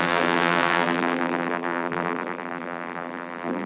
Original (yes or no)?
no